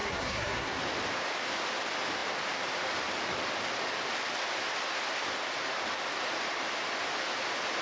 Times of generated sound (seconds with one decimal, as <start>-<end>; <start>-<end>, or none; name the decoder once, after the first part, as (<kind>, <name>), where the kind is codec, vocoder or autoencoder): 0.0-0.8 (codec, SNAC)